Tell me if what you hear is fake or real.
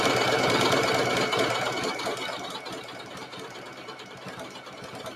fake